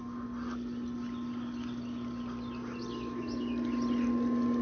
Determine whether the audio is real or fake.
real